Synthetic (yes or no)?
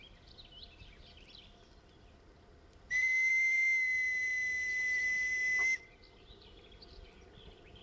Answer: no